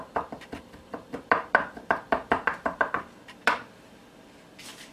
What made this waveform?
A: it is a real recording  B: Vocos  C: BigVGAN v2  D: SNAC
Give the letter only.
C